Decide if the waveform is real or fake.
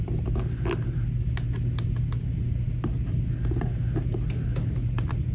real